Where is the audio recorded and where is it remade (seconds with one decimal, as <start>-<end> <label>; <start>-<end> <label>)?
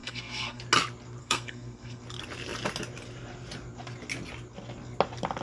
0.0-0.6 remade; 0.6-1.2 recorded; 1.2-2.0 remade; 2.0-5.4 recorded